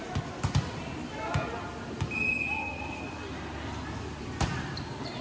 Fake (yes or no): no